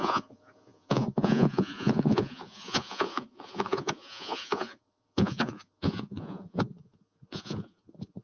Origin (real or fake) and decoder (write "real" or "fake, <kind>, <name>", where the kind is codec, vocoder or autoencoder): fake, vocoder, Vocos